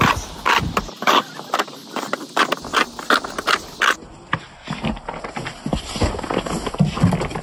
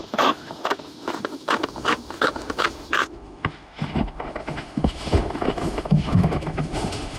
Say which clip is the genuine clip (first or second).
first